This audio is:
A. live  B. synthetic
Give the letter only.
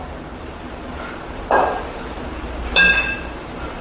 B